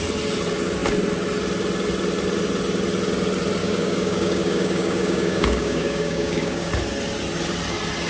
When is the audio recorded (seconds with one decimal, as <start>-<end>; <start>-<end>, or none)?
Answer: 0.0-3.6; 6.7-8.1